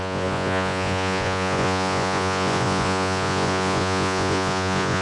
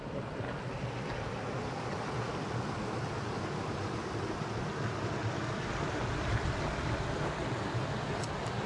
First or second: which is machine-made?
first